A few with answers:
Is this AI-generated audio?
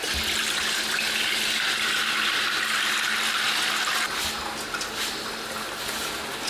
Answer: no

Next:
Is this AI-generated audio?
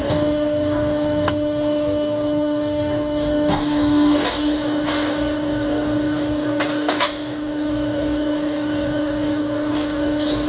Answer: yes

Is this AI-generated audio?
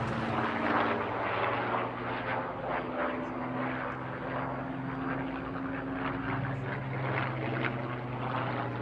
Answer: no